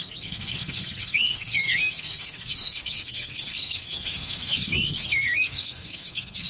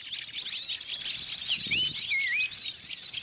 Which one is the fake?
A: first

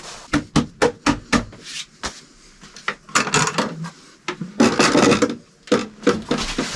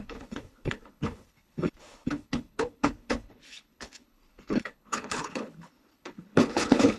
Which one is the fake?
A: second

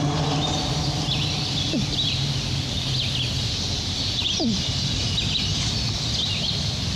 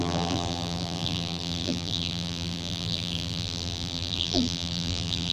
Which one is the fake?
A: second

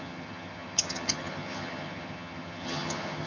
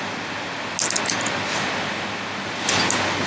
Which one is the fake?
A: first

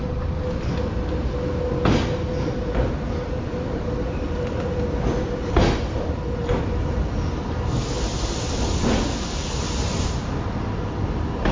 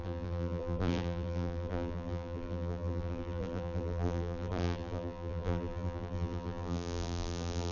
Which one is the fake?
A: second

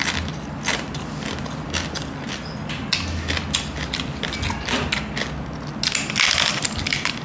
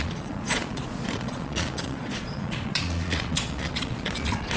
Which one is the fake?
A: second